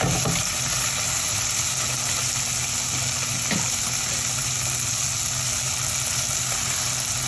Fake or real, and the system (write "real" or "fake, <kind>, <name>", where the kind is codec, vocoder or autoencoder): real